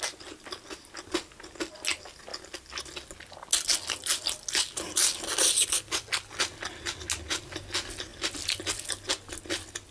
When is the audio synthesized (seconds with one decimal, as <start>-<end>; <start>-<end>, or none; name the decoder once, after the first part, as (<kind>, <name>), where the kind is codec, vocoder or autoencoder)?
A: none